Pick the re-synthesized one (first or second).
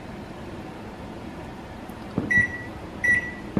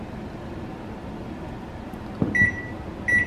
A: first